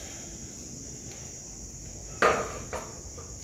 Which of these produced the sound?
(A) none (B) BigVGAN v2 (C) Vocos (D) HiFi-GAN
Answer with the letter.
A